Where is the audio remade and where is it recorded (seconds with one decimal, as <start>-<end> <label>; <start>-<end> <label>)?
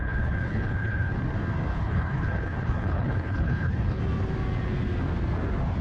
0.0-1.1 remade; 1.1-1.7 recorded; 1.7-4.0 remade; 4.0-5.8 recorded